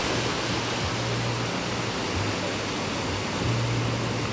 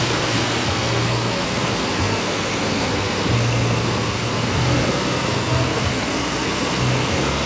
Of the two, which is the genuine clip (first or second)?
first